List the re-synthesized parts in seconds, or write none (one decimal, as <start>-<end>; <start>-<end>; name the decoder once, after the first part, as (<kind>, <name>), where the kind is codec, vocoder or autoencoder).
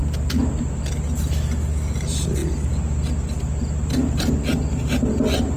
none